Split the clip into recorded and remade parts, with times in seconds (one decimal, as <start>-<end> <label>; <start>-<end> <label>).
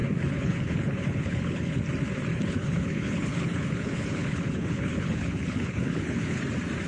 0.0-1.8 remade; 1.8-2.3 recorded; 2.3-6.4 remade; 6.4-6.9 recorded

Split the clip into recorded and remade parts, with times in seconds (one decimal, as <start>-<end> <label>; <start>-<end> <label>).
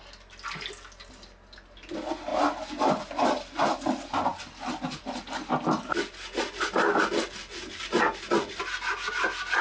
0.0-9.6 recorded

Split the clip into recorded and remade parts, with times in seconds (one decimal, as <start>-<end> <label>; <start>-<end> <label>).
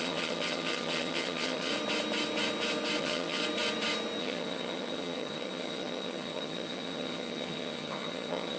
0.0-1.7 remade; 1.7-3.0 recorded; 3.0-3.4 remade; 3.4-4.2 recorded; 4.2-8.6 remade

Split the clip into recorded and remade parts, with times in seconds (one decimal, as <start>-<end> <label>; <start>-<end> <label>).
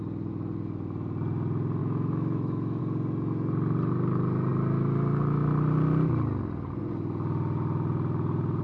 0.0-1.8 recorded; 1.8-2.8 remade; 2.8-8.6 recorded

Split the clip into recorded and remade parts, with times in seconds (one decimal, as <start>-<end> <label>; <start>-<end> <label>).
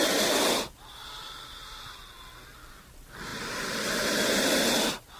0.0-1.0 remade; 1.0-2.7 recorded; 2.7-5.2 remade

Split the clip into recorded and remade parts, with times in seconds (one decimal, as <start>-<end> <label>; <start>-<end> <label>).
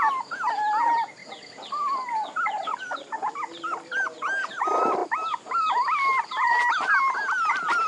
0.0-3.2 recorded; 3.2-3.9 remade; 3.9-7.9 recorded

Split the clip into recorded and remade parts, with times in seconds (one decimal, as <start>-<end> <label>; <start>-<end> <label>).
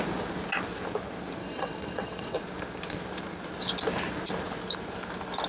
0.0-1.4 recorded; 1.4-2.4 remade; 2.4-5.5 recorded